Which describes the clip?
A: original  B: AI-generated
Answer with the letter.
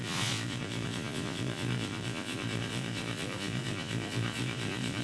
B